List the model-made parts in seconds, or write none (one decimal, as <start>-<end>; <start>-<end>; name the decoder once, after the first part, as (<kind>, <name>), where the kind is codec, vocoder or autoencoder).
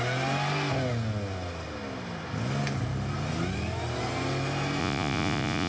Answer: 4.8-5.7 (vocoder, Vocos)